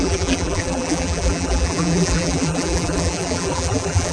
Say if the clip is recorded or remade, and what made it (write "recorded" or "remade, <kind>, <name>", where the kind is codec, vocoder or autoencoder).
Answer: remade, vocoder, BigVGAN v2